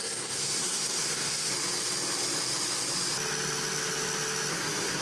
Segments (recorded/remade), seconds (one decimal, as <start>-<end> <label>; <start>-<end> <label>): 0.0-1.5 remade; 1.5-4.5 recorded; 4.5-5.0 remade